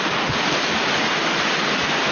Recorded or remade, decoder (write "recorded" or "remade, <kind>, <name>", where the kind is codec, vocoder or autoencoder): recorded